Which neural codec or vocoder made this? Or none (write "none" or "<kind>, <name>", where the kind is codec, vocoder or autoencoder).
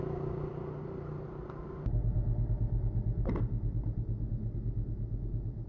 none